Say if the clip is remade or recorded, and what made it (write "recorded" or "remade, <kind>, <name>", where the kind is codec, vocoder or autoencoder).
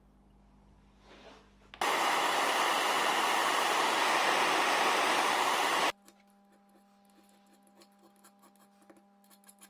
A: recorded